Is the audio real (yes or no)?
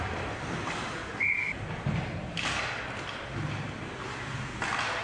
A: yes